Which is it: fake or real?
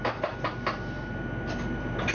real